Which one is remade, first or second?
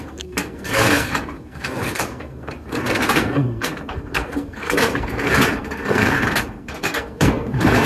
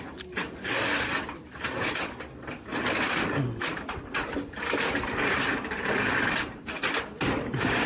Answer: first